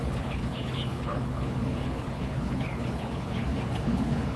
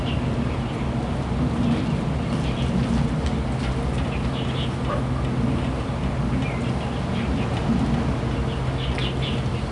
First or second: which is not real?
first